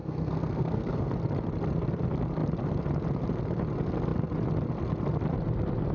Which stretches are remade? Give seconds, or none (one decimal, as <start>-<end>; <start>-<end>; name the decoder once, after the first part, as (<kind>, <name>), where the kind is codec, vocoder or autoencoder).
0.0-1.1 (codec, SNAC)